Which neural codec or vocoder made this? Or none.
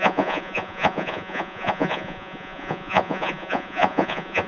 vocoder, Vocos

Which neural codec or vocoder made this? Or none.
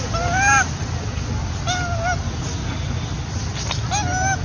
none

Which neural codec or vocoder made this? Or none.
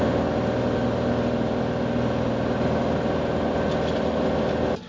none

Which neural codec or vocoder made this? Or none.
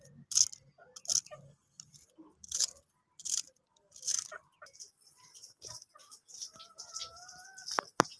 none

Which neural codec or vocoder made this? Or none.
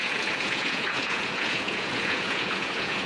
vocoder, Vocos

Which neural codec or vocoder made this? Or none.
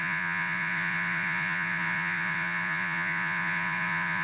vocoder, Vocos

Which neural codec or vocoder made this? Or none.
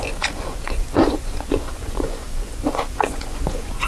vocoder, Vocos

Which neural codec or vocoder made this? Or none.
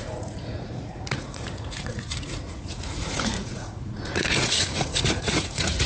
vocoder, Vocos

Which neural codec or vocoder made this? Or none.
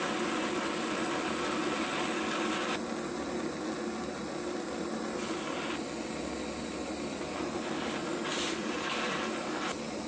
none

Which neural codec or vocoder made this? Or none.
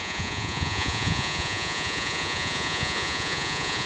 vocoder, Vocos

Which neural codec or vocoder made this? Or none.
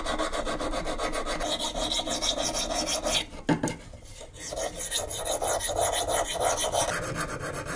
none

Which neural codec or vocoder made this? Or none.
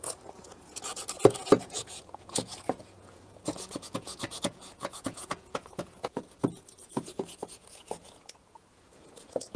vocoder, Vocos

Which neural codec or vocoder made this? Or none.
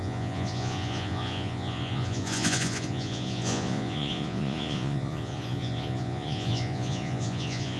vocoder, Vocos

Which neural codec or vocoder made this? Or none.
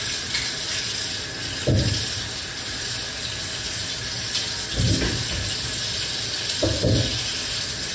none